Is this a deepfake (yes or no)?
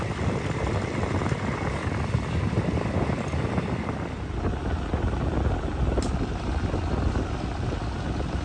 no